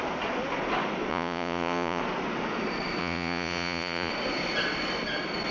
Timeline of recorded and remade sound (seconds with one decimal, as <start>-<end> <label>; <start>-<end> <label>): 0.0-1.1 recorded; 1.1-2.0 remade; 2.0-3.0 recorded; 3.0-4.1 remade; 4.1-5.5 recorded